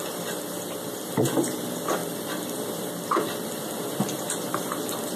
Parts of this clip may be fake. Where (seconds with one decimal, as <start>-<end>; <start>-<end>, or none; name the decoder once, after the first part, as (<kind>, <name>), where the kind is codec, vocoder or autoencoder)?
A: 0.0-5.2 (vocoder, BigVGAN v2)